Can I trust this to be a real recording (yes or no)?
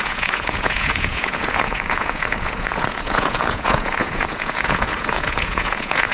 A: no